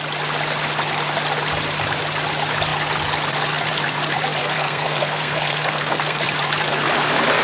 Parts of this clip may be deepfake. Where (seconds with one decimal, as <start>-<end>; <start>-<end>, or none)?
4.4-6.2

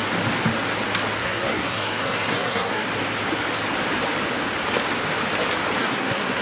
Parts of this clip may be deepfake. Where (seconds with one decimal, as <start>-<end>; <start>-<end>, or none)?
1.2-2.9; 5.8-6.4

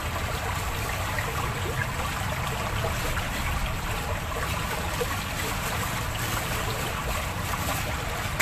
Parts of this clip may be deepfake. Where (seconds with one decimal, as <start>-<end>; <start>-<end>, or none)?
none

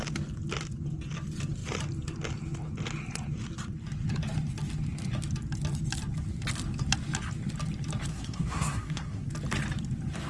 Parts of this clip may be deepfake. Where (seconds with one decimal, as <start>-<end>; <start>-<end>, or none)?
8.1-9.3

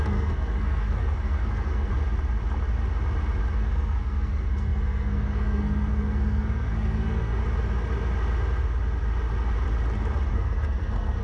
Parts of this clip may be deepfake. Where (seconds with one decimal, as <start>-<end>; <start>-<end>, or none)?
0.0-1.9; 3.5-7.4; 10.3-11.2

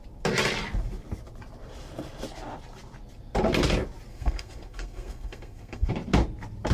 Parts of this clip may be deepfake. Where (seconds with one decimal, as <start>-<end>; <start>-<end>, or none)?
4.1-5.9

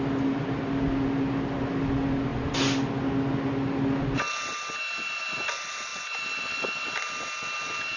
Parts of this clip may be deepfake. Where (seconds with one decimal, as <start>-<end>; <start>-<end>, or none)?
none